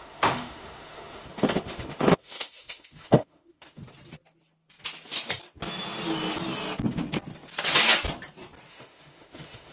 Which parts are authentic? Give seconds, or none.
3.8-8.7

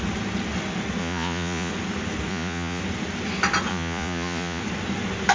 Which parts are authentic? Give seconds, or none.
0.0-1.0; 1.7-2.3; 2.8-3.7; 4.6-5.3

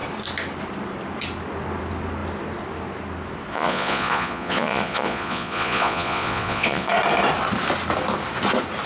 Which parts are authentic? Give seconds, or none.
0.0-3.5; 6.9-8.9

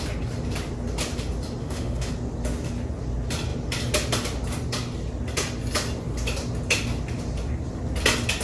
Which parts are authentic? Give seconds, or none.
0.0-1.6; 2.1-8.4

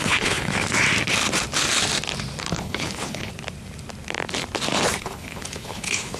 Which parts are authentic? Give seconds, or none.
0.5-2.4; 3.3-5.0

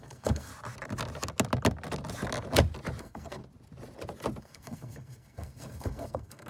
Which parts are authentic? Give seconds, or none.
0.5-3.0; 3.4-4.4